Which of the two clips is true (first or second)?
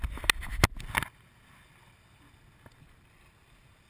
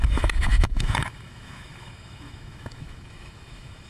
first